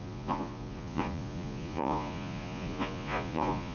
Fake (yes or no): yes